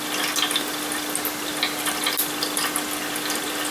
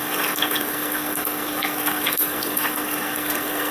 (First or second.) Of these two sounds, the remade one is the second